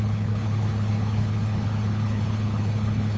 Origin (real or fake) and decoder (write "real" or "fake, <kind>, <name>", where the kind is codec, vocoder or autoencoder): fake, codec, HILCodec